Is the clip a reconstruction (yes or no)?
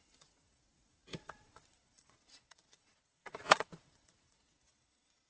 yes